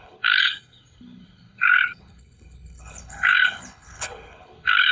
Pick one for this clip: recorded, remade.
remade